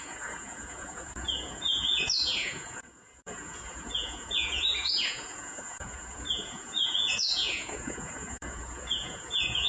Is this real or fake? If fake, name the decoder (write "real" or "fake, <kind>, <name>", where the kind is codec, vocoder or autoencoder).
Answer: fake, vocoder, Vocos